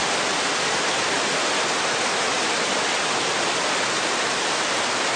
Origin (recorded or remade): recorded